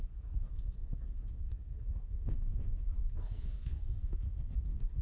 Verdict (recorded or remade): remade